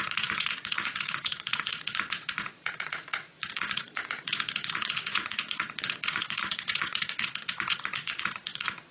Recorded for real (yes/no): no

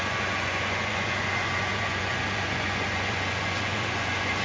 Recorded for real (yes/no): no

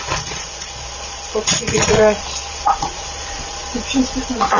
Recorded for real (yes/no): no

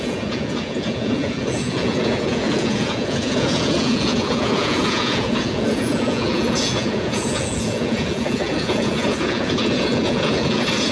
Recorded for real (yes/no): no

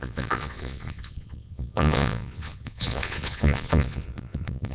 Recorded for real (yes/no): no